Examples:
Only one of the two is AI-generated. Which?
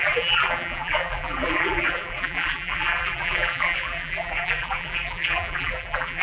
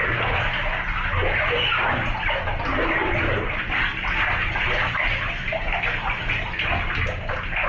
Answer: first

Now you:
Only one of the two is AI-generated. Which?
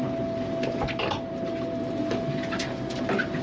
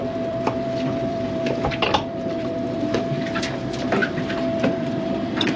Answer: second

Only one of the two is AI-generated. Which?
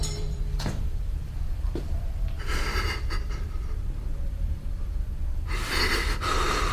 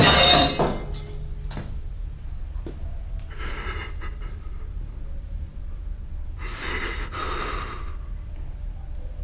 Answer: first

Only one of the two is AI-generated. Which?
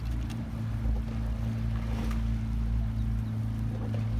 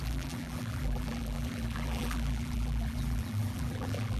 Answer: second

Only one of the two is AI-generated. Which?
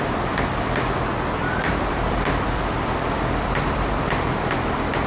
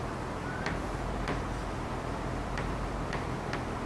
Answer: first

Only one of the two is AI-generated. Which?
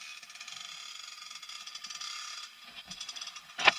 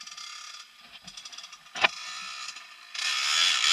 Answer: first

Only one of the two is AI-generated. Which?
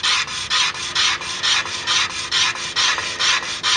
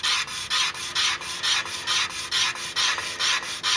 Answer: first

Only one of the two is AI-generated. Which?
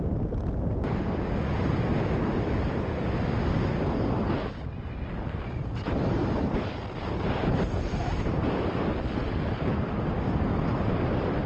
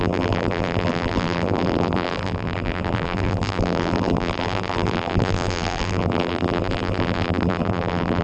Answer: second